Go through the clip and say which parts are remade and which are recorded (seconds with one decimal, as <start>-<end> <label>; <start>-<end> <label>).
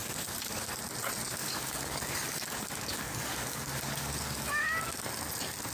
0.0-0.8 remade; 0.8-1.4 recorded; 1.4-4.8 remade; 4.8-5.7 recorded